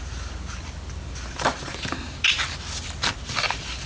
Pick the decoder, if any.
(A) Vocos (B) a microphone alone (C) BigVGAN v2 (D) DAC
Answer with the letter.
B